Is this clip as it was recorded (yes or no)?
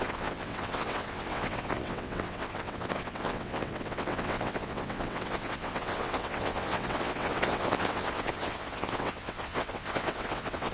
no